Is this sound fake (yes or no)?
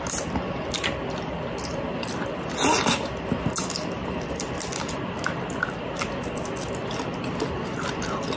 no